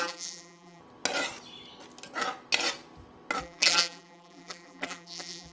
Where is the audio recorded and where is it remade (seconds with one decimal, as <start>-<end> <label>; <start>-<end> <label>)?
0.0-0.8 remade; 0.8-3.4 recorded; 3.4-5.5 remade